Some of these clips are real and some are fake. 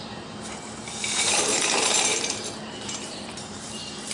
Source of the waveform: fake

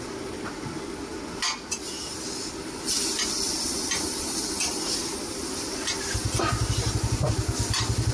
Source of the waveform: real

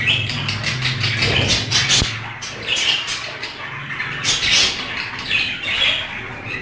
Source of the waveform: real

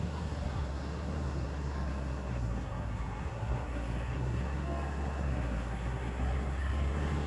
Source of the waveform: fake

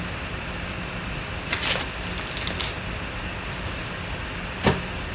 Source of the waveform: real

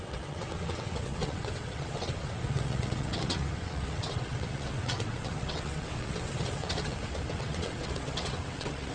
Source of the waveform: fake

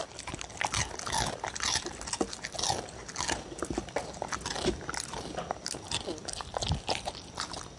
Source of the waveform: real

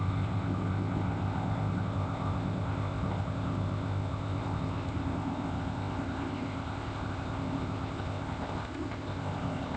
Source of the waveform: fake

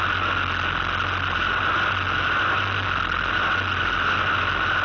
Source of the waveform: real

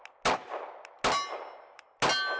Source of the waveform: real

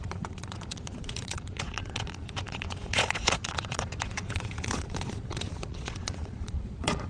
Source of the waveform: fake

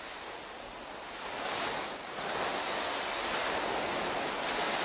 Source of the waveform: real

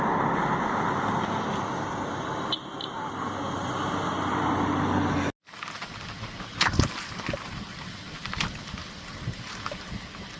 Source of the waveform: real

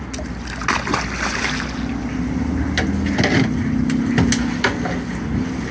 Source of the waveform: real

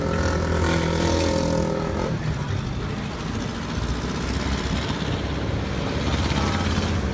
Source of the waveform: real